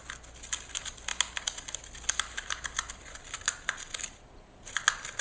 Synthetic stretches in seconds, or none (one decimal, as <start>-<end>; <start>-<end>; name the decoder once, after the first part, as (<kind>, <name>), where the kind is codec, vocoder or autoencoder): none